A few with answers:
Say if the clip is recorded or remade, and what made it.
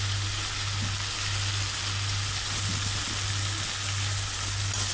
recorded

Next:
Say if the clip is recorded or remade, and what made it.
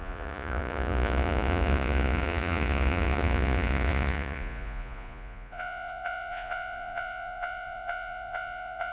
remade, vocoder, Vocos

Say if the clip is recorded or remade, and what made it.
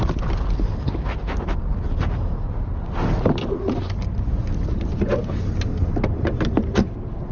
recorded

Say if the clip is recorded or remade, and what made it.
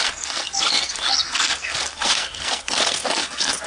remade, codec, SNAC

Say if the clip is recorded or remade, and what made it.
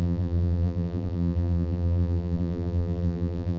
remade, vocoder, BigVGAN v2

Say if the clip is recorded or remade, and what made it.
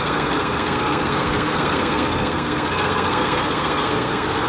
remade, codec, SNAC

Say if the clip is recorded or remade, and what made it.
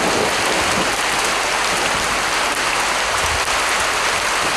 recorded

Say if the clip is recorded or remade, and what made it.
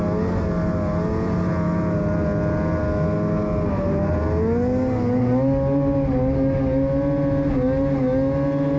recorded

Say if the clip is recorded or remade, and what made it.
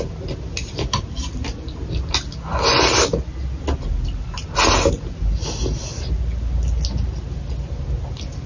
recorded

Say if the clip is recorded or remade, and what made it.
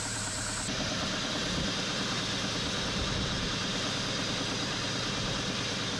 remade, vocoder, BigVGAN v2